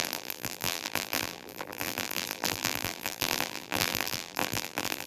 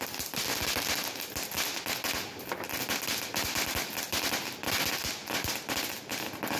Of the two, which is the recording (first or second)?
second